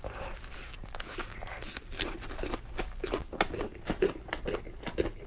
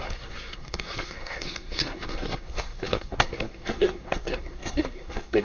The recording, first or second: first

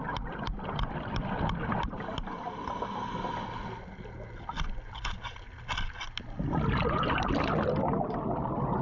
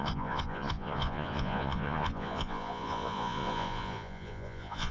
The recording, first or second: first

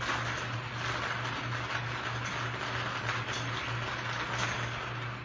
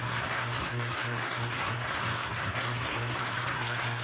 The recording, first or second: first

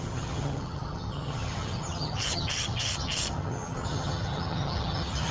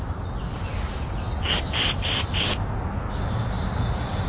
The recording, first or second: second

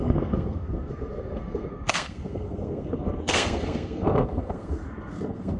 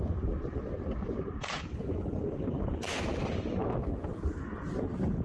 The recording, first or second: second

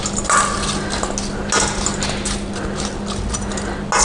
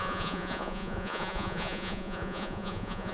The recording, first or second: first